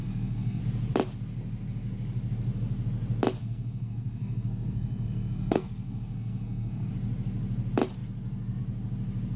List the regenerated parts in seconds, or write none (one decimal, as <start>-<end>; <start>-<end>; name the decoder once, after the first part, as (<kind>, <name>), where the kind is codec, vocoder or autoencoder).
0.0-0.6 (codec, SNAC); 3.4-6.9